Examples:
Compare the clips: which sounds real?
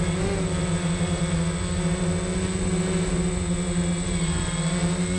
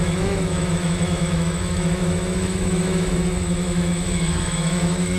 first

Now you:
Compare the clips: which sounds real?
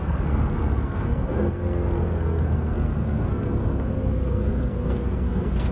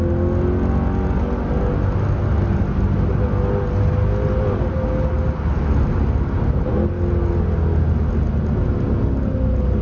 second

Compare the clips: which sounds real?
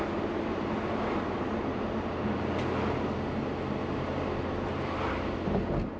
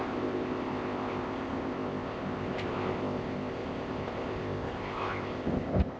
first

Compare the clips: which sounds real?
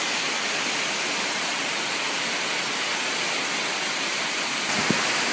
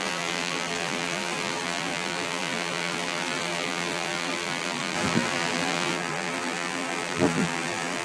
first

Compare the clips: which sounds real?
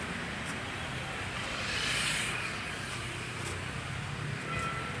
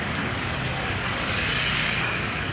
first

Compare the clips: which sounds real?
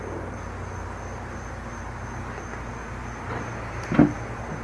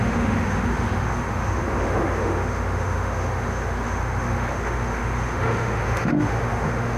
first